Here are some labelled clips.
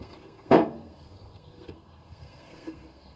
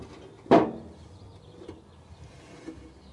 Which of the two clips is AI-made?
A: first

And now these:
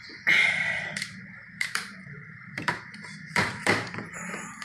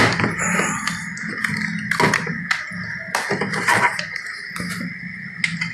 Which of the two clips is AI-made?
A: first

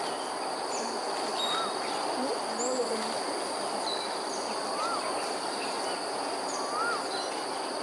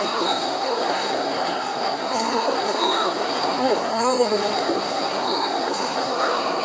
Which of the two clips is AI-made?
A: second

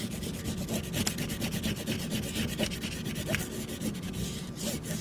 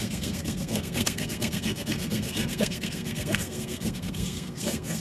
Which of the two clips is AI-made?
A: second